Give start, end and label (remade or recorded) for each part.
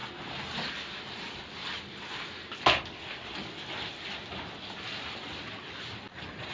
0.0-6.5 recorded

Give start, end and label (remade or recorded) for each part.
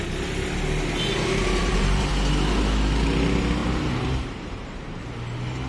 0.0-1.6 recorded; 1.6-2.1 remade; 2.1-3.6 recorded; 3.6-5.0 remade; 5.0-5.7 recorded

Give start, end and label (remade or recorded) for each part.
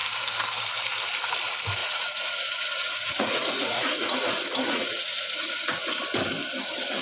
0.0-1.8 recorded; 1.8-6.0 remade; 6.0-7.0 recorded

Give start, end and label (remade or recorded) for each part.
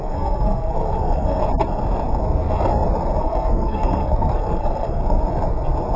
0.0-1.4 remade; 1.4-3.2 recorded; 3.2-5.0 remade; 5.0-6.0 recorded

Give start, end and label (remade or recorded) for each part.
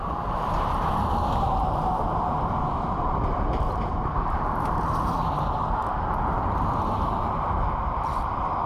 0.0-5.8 remade; 5.8-8.7 recorded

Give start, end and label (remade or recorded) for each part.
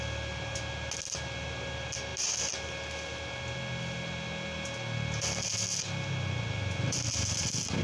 0.0-7.8 recorded